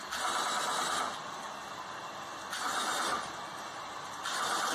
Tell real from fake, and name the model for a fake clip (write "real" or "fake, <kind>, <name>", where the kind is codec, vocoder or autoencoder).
real